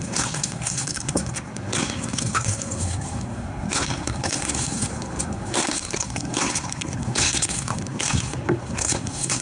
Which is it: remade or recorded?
remade